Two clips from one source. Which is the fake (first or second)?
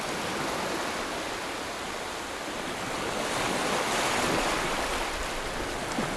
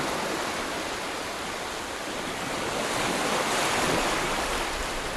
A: second